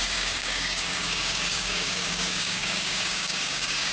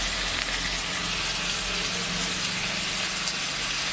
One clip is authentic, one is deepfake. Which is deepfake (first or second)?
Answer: first